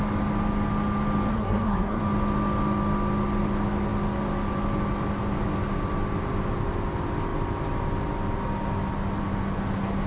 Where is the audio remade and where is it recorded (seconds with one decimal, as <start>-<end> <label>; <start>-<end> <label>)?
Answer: 0.0-1.3 recorded; 1.3-2.0 remade; 2.0-10.1 recorded